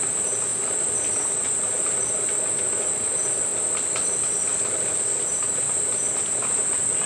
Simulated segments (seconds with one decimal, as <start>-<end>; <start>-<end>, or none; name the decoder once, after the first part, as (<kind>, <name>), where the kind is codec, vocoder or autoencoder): none